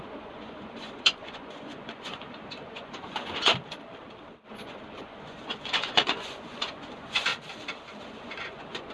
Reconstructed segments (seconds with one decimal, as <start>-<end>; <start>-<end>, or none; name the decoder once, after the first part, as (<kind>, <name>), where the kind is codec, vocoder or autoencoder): 0.0-3.5 (vocoder, Vocos); 4.5-7.3; 8.0-8.9